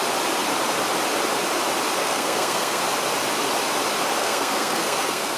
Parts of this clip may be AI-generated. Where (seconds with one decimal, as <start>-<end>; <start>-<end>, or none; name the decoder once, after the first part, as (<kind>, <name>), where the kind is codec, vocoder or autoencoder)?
2.0-2.8 (codec, SNAC); 4.2-5.4